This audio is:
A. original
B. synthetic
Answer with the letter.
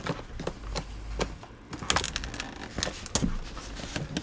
A